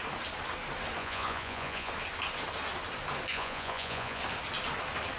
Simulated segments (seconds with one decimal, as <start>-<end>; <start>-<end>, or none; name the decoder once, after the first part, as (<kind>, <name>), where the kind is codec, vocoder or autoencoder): 1.0-1.9 (vocoder, Vocos); 3.3-4.2